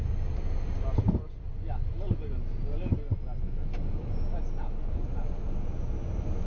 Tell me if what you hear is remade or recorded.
recorded